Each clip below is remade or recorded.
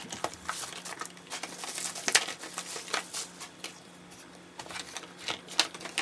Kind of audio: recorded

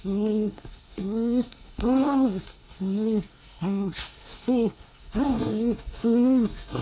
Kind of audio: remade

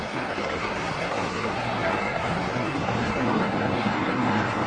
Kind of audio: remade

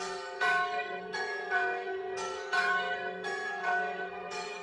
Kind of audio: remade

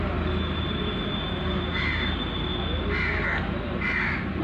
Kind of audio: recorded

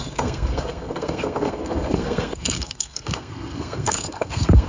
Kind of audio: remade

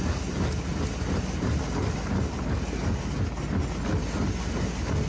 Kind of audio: recorded